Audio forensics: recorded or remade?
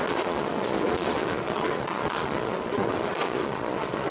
remade